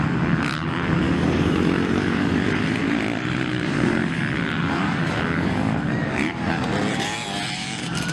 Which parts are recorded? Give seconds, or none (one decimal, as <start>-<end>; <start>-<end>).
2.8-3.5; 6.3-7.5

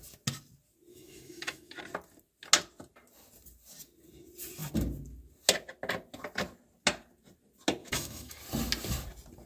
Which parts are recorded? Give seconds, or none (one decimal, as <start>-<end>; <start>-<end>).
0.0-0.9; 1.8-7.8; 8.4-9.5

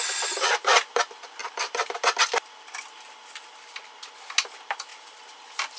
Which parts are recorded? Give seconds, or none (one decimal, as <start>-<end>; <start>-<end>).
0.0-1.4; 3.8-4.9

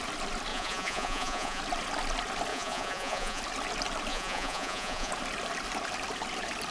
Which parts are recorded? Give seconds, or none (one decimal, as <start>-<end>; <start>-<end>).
0.0-0.5; 1.6-2.5; 3.4-4.1; 5.1-6.7

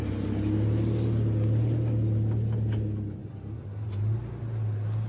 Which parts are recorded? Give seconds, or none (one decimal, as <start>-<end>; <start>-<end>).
0.0-5.1